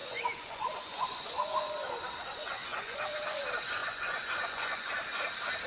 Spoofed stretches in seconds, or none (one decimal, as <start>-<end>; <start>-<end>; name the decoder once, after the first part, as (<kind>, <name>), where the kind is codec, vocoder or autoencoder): 0.0-1.9 (vocoder, Vocos); 2.3-3.4; 3.8-4.9